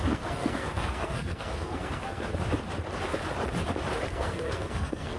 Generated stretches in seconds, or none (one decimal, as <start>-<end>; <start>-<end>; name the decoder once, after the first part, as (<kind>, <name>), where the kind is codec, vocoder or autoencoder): 0.0-2.3 (codec, SNAC); 4.1-5.2